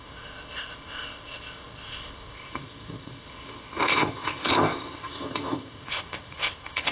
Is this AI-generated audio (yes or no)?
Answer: yes